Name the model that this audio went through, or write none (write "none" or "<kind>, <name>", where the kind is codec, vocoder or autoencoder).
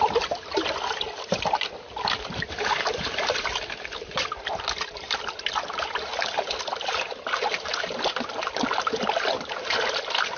none